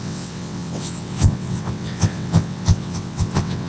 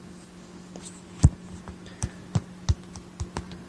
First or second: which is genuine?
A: second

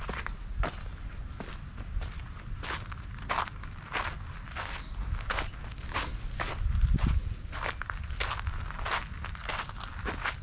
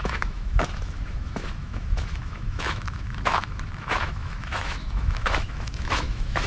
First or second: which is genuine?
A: first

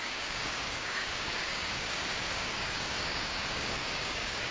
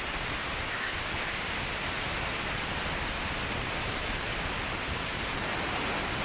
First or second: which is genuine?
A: second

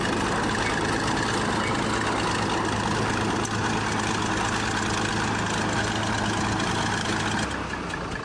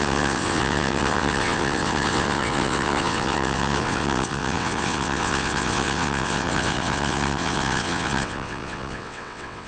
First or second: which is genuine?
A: first